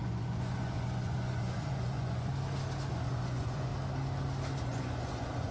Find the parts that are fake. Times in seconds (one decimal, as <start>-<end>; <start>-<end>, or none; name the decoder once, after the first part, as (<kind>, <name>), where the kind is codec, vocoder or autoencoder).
0.0-2.3 (vocoder, Vocos); 2.9-3.7; 4.6-5.5